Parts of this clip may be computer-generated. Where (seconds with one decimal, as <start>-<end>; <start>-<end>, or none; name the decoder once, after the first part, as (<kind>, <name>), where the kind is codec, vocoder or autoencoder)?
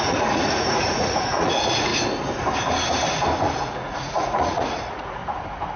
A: 0.0-1.9 (vocoder, Vocos); 3.4-5.2